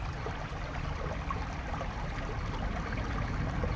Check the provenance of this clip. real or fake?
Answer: real